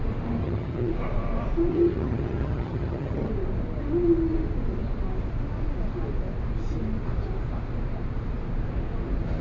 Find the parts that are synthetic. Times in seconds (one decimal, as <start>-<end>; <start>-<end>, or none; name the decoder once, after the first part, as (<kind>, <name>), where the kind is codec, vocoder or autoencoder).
0.4-0.9 (vocoder, HiFi-GAN); 1.7-3.3